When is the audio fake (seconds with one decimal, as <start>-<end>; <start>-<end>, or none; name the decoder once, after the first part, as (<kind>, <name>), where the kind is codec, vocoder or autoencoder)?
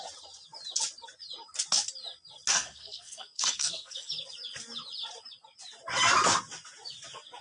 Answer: 2.5-4.1 (codec, SNAC)